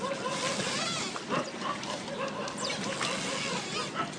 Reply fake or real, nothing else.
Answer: real